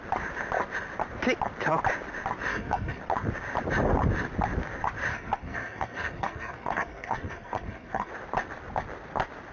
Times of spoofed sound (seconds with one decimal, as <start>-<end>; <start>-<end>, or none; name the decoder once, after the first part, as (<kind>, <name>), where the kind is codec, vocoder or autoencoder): 2.5-3.0 (codec, SNAC); 5.1-8.1

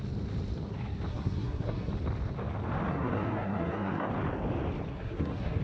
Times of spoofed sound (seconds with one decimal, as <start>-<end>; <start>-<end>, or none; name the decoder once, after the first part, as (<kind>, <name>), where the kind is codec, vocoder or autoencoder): 1.1-1.9 (codec, SNAC); 2.9-4.1; 4.9-5.6

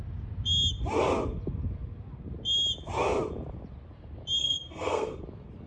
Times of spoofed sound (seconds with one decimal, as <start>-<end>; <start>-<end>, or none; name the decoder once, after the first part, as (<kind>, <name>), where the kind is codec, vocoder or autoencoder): 4.4-5.2 (codec, SNAC)

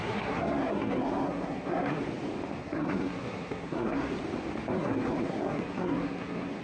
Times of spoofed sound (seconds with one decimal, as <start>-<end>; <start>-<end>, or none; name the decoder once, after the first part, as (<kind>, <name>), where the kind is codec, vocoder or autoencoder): 0.0-2.0 (codec, SNAC); 2.6-4.1; 4.7-6.6